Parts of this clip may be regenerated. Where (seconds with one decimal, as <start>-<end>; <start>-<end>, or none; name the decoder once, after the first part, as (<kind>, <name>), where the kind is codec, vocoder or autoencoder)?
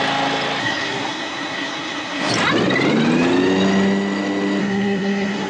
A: 0.6-2.3 (codec, SNAC); 4.6-5.5